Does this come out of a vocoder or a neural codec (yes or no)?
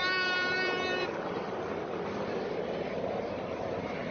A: yes